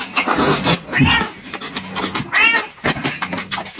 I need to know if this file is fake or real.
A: real